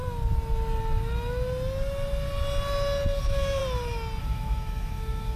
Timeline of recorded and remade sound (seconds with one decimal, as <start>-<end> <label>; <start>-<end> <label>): 0.0-3.2 recorded; 3.2-3.6 remade; 3.6-4.2 recorded; 4.2-5.4 remade